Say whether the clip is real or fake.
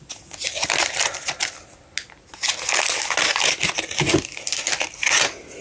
real